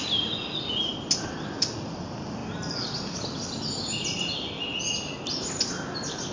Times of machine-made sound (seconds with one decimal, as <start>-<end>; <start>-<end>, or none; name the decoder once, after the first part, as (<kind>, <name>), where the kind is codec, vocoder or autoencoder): none